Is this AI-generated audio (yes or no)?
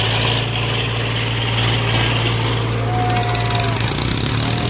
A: no